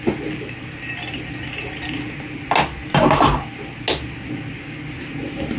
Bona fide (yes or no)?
yes